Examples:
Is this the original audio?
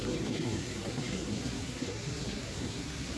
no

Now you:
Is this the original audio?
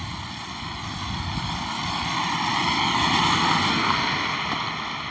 yes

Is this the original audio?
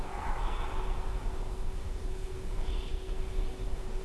no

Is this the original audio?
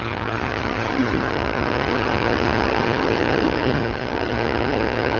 no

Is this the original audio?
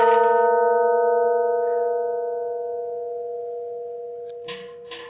yes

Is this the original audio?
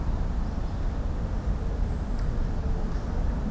yes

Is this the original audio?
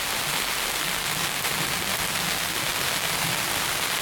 yes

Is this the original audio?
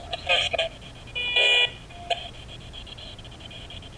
yes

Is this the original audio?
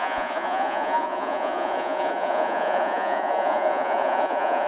no